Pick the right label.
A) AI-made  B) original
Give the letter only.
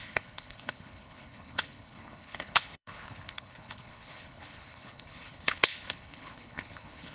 A